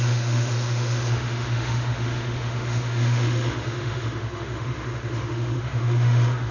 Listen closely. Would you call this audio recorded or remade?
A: remade